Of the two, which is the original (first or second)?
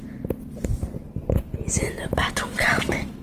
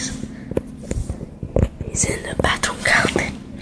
first